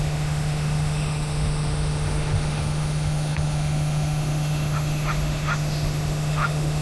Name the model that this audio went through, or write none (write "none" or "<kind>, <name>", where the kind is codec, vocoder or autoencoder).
autoencoder, DAC-VAE